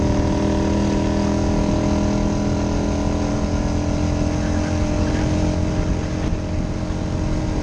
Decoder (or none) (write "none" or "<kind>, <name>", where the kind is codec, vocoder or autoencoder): none